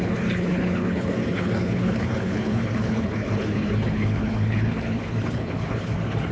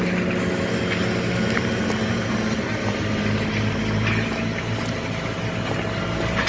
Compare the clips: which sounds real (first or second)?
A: second